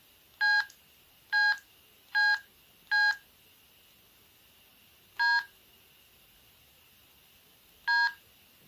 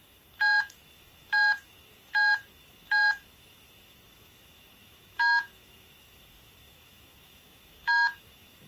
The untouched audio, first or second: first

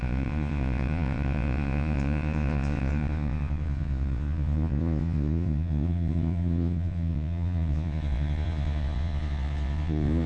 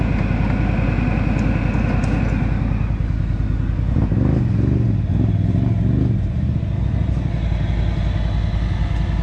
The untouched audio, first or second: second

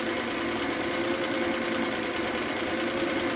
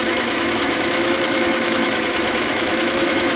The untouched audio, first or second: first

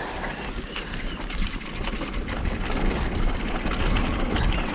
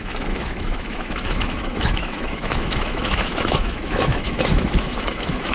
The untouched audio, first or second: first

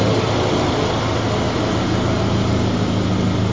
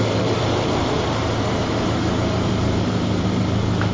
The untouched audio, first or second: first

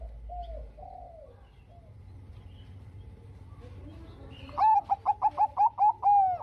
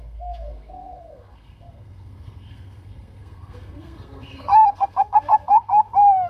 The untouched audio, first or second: first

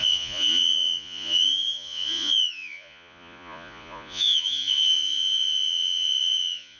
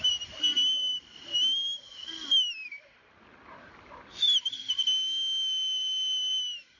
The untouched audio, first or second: second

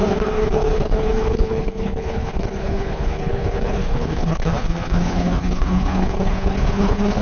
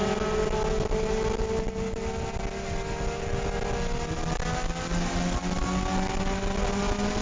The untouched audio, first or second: second